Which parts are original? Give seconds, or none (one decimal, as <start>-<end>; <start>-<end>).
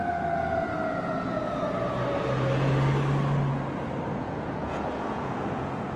0.0-4.1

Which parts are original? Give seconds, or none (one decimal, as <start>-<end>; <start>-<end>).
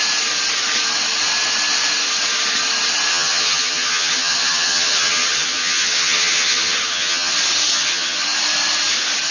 0.0-3.1; 7.3-7.7; 8.2-9.3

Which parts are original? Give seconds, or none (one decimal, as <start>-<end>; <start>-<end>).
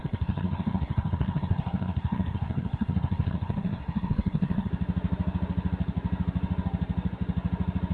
4.7-7.9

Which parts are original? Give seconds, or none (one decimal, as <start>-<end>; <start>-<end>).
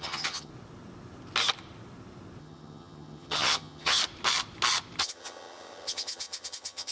0.5-2.4; 4.0-5.0